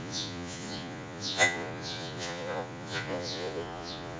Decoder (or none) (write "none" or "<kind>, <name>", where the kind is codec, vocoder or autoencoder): vocoder, Vocos